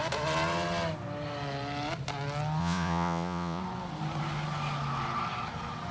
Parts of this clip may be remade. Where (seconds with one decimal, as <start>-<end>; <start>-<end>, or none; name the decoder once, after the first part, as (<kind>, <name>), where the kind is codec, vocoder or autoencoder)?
2.6-3.6 (vocoder, Vocos)